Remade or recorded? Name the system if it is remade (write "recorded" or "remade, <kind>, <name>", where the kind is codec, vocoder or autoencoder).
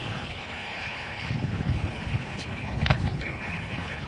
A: remade, codec, HILCodec